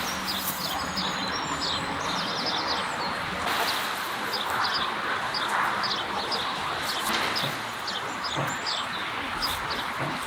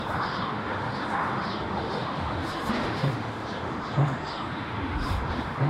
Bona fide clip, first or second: first